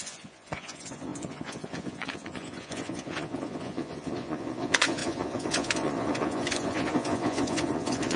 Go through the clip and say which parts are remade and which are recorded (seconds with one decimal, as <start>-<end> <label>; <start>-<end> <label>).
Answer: 0.0-8.2 remade